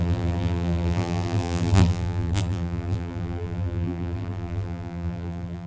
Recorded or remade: remade